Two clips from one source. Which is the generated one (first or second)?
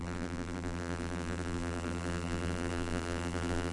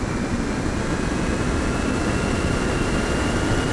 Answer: first